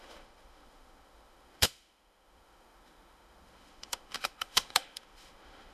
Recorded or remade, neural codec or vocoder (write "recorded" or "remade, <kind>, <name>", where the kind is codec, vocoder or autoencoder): remade, autoencoder, DAC-VAE